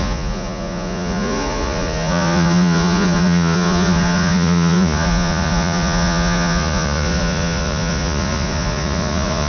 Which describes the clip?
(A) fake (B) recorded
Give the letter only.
A